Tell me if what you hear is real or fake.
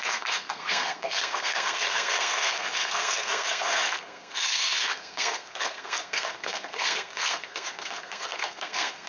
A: fake